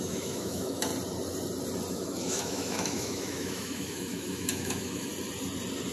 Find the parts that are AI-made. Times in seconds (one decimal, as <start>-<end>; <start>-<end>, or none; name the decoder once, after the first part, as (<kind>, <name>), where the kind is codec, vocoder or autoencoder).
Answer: 0.0-0.9 (autoencoder, DAC-VAE); 1.9-5.1